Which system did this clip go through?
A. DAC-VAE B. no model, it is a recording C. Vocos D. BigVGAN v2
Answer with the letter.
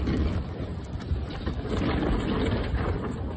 B